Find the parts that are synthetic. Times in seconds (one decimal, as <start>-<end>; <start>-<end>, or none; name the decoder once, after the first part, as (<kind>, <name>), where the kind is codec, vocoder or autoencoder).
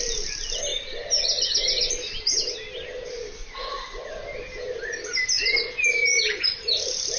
3.4-4.1 (vocoder, Vocos)